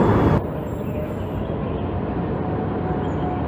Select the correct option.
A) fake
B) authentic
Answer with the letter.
B